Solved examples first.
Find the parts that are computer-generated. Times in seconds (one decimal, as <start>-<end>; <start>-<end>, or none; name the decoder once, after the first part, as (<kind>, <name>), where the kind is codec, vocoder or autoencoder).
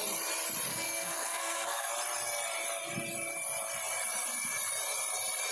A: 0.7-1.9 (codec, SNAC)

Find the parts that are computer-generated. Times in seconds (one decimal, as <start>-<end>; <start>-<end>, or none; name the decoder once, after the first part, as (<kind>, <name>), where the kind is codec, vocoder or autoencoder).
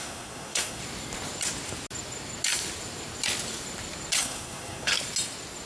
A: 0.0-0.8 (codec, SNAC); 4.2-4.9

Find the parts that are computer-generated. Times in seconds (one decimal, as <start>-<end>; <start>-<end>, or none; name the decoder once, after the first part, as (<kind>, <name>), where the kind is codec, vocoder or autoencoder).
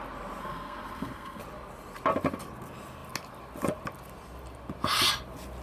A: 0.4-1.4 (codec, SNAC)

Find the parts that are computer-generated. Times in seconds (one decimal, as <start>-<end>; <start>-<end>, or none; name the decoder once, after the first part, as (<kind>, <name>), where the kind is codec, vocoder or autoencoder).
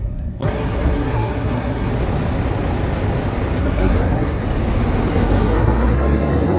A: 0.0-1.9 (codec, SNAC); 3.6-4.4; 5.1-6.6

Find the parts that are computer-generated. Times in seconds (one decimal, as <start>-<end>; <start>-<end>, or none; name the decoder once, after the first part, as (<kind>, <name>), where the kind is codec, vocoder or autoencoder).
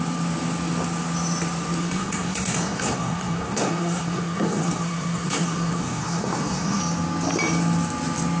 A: 1.8-6.8 (codec, SNAC)